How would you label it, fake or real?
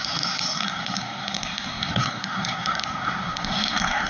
fake